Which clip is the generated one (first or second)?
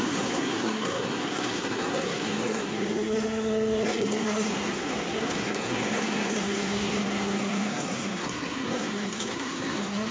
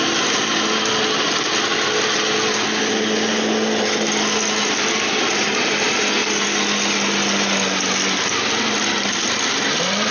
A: first